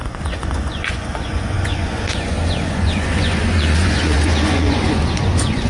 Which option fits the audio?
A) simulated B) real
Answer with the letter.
A